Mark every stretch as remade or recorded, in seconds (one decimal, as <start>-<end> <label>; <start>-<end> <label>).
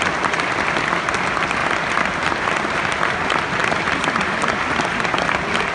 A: 0.0-5.7 recorded